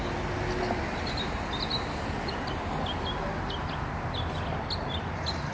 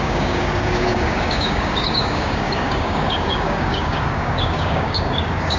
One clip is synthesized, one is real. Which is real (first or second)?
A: first